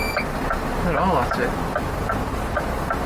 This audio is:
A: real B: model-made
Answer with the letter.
A